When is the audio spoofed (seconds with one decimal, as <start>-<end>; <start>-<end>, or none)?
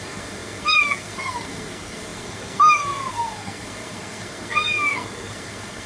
0.0-5.9